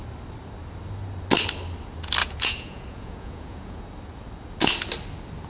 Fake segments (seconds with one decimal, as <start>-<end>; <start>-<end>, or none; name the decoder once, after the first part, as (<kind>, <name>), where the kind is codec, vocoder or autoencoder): 2.2-3.8 (vocoder, Vocos)

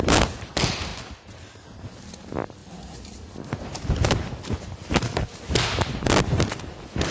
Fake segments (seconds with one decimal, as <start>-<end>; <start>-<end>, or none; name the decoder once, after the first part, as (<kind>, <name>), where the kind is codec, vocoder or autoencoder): none